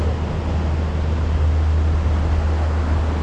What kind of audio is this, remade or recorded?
recorded